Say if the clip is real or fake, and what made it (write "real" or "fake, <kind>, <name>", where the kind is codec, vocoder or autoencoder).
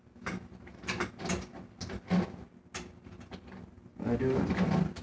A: real